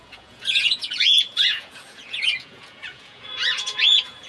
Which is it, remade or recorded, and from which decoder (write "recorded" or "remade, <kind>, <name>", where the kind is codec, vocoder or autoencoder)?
remade, vocoder, Vocos